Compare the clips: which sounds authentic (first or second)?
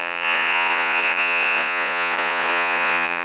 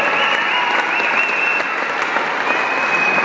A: second